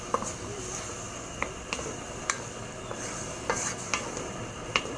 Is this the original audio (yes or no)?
yes